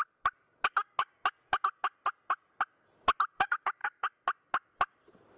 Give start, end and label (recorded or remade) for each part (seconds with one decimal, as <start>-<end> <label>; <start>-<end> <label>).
0.0-5.4 recorded